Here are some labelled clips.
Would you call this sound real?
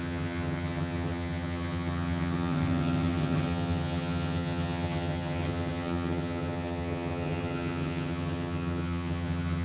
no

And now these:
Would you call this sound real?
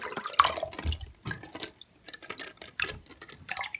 yes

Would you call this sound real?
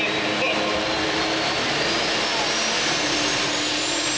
yes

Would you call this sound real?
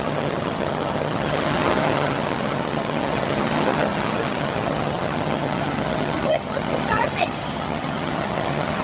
no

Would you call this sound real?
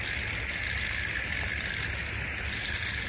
yes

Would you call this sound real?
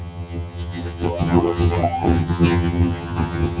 no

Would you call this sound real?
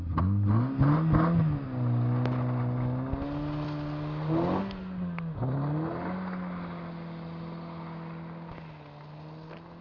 yes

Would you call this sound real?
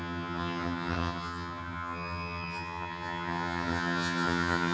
no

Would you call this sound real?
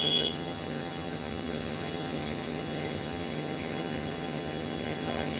no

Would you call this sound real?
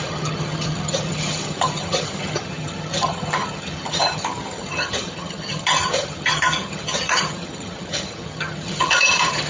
no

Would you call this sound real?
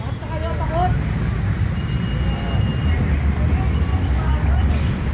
yes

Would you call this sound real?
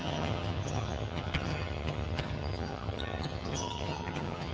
no